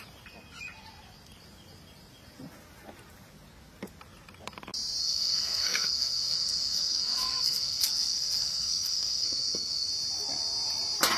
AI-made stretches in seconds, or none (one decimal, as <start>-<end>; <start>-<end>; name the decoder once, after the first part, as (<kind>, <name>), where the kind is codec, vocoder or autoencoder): 5.0-9.9 (codec, SNAC)